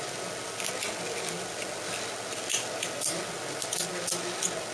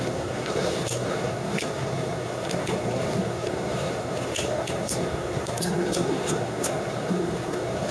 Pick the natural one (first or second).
first